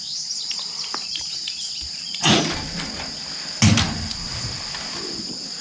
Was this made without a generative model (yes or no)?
yes